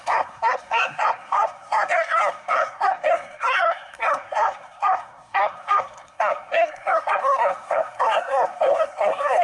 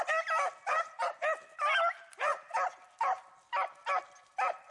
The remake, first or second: first